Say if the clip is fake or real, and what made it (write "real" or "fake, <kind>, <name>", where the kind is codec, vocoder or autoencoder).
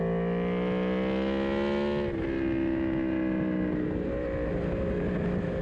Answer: real